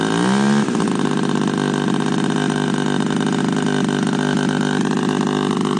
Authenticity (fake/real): real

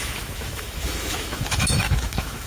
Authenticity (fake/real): fake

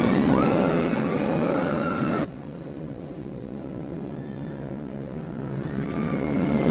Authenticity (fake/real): fake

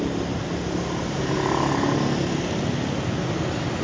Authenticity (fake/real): real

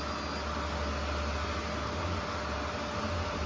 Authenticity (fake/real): real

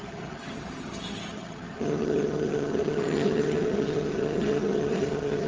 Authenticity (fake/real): fake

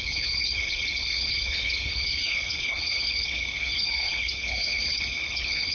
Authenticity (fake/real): fake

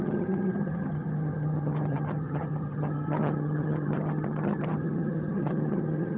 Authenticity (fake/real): fake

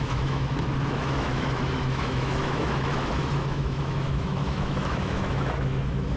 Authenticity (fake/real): fake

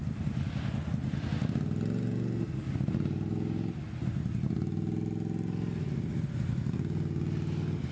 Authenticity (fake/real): real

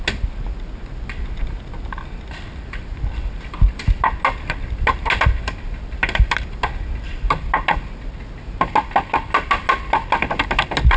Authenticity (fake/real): real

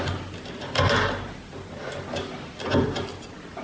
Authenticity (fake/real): real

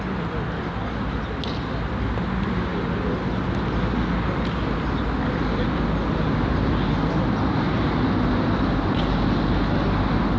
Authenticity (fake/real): real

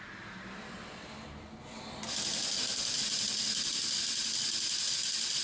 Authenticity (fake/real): real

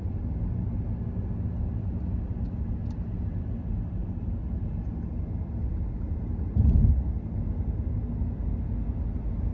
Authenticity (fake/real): real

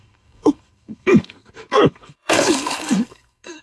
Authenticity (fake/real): fake